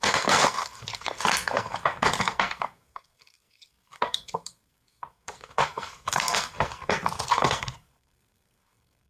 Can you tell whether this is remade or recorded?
remade